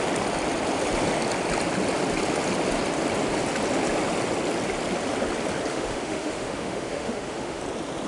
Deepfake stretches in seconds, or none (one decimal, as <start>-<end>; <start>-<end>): 5.7-7.6